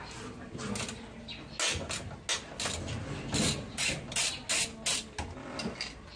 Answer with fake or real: real